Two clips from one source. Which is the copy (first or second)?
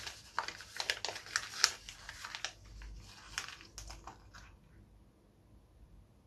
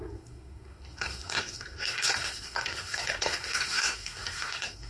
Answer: second